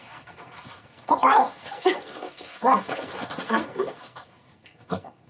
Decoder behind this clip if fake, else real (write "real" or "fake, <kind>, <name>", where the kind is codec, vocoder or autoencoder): fake, codec, SNAC